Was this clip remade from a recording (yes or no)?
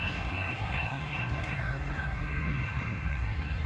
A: yes